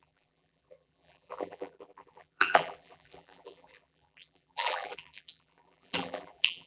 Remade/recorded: remade